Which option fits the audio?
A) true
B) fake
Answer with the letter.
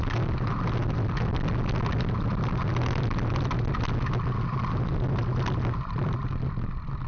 A